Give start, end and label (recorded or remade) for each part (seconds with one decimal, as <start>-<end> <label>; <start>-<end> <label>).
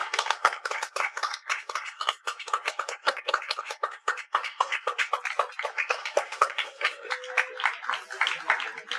0.0-5.1 remade; 5.1-5.7 recorded; 5.7-7.1 remade; 7.1-9.0 recorded